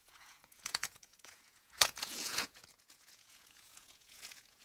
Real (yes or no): no